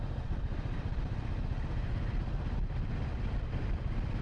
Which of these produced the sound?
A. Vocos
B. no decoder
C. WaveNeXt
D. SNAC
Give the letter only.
B